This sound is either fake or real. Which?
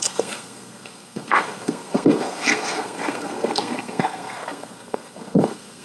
fake